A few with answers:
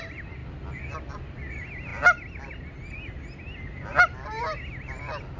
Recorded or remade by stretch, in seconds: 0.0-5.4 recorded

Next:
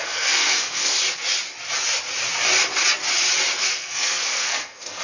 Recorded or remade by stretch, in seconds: 0.0-0.9 remade; 0.9-3.6 recorded; 3.6-5.0 remade

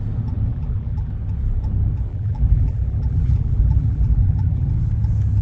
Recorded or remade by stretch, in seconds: 0.0-0.5 recorded; 0.5-1.1 remade; 1.1-2.1 recorded; 2.1-4.7 remade; 4.7-5.4 recorded